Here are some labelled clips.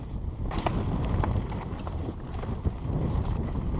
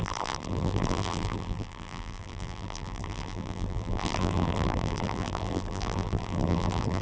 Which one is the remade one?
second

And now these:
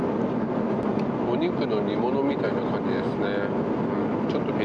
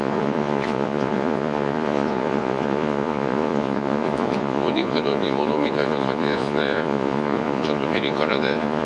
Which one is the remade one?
second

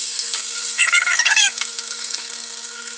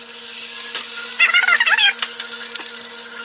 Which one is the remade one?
first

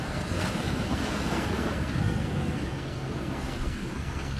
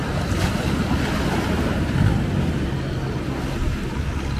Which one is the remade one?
first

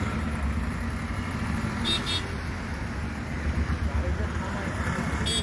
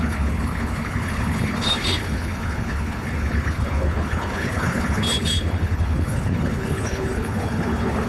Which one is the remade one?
second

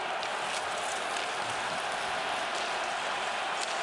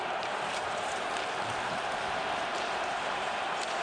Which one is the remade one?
second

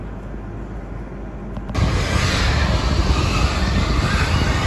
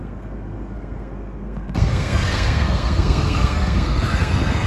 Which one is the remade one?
second